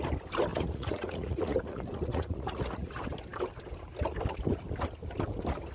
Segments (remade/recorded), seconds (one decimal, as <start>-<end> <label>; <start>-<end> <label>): 0.0-0.5 recorded; 0.5-2.9 remade; 2.9-5.7 recorded